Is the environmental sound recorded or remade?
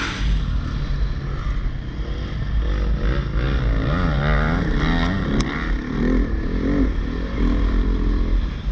recorded